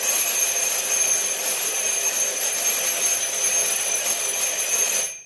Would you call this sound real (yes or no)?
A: yes